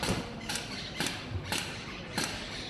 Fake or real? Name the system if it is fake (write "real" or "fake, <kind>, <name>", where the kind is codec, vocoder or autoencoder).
real